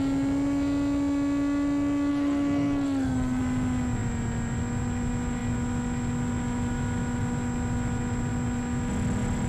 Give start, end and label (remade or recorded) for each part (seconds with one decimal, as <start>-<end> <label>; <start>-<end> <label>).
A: 0.0-2.1 recorded; 2.1-3.4 remade; 3.4-9.5 recorded